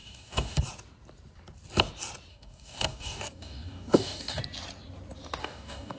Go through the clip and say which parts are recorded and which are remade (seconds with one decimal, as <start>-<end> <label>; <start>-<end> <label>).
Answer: 0.0-0.6 remade; 0.6-2.3 recorded; 2.3-4.4 remade; 4.4-5.4 recorded; 5.4-6.0 remade